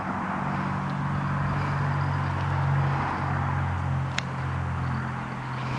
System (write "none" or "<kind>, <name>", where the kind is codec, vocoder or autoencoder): none